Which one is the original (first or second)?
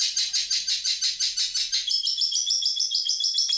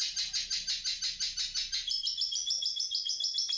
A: second